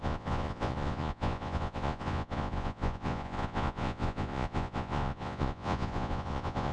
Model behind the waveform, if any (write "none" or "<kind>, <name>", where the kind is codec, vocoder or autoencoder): vocoder, Vocos